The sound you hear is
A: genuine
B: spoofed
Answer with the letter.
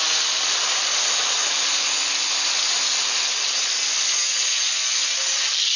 A